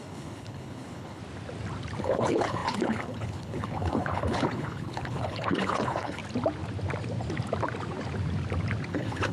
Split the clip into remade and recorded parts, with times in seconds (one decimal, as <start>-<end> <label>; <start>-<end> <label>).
0.0-1.2 remade; 1.2-2.0 recorded; 2.0-6.2 remade; 6.2-8.9 recorded; 8.9-9.3 remade